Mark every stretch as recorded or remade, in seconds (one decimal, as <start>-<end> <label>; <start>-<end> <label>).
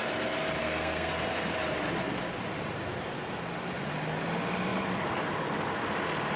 0.0-0.6 recorded; 0.6-1.1 remade; 1.1-6.4 recorded